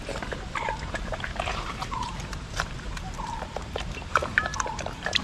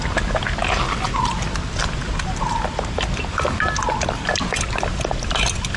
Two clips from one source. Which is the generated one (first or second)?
first